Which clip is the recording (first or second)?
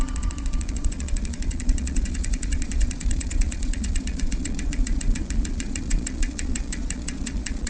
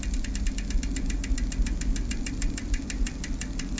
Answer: second